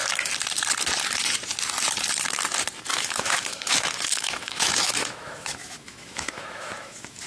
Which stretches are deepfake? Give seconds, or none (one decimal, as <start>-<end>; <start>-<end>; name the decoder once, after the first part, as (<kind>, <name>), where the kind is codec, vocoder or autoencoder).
2.9-7.3 (autoencoder, DAC-VAE)